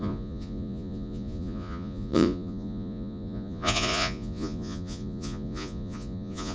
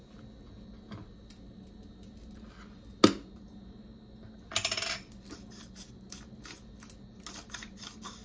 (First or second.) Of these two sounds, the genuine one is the second